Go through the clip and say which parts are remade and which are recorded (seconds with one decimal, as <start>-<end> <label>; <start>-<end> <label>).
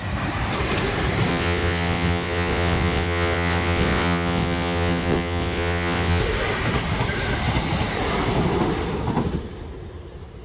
0.0-1.3 recorded; 1.3-6.2 remade; 6.2-10.4 recorded